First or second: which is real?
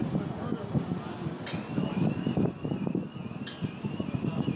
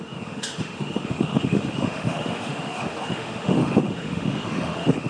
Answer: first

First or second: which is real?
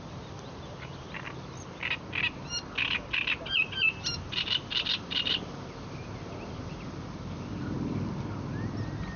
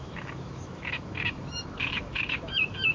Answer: first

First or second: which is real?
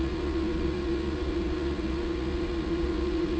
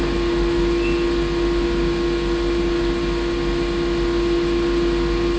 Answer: second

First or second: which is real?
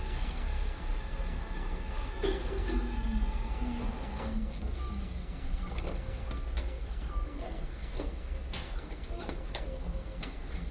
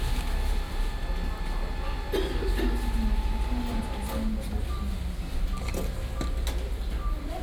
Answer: second